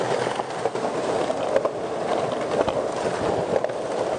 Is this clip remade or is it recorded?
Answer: recorded